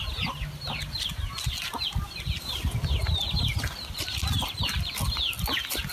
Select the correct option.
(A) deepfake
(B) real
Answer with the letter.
B